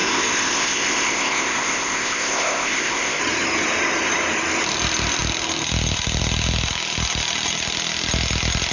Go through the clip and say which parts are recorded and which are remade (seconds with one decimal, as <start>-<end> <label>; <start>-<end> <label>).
0.0-3.2 remade; 3.2-8.7 recorded

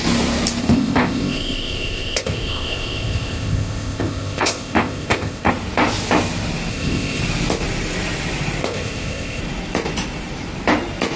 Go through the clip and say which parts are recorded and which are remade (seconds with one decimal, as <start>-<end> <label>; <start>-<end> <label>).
0.0-0.6 recorded; 0.6-5.5 remade; 5.5-6.7 recorded; 6.7-7.2 remade; 7.2-8.6 recorded; 8.6-9.4 remade; 9.4-11.2 recorded